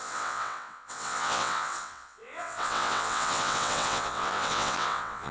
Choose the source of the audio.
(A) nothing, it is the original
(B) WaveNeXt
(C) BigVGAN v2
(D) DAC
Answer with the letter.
B